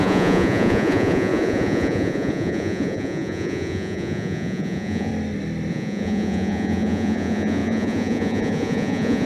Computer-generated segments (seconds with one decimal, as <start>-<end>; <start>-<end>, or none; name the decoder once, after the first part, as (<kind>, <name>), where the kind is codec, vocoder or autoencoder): 0.0-5.1 (vocoder, Vocos); 5.7-9.3